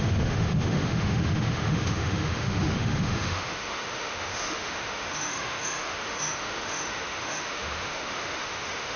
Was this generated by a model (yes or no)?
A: yes